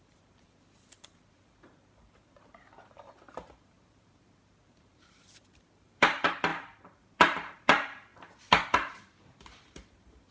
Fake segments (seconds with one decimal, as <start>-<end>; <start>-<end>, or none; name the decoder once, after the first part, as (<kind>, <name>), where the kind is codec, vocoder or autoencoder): 0.0-8.1 (vocoder, BigVGAN v2); 9.0-10.3